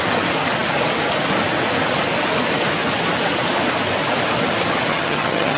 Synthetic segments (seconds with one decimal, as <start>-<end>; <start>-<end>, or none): 4.9-5.6